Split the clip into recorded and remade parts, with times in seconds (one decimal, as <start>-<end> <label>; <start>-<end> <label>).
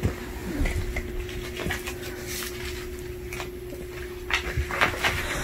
0.0-5.4 recorded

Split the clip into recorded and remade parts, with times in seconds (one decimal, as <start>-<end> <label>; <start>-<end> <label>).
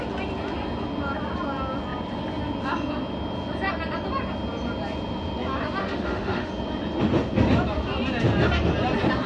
0.0-5.8 recorded; 5.8-6.5 remade; 6.5-9.3 recorded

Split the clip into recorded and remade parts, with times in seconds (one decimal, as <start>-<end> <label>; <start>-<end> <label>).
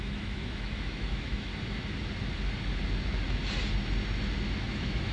0.0-1.5 remade; 1.5-4.6 recorded; 4.6-5.1 remade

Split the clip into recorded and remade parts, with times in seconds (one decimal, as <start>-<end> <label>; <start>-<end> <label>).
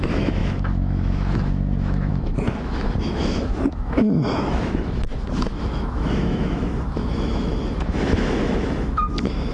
0.0-9.5 remade